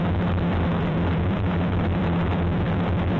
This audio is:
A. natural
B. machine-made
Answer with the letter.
B